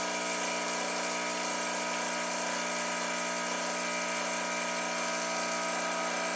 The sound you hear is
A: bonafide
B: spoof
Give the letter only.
A